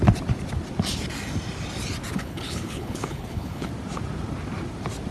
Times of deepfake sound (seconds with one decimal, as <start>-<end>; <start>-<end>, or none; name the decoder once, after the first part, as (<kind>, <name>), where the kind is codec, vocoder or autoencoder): 2.1-3.7 (codec, HILCodec)